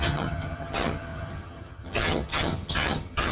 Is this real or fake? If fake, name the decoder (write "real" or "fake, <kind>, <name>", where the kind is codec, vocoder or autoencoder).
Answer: fake, vocoder, HiFi-GAN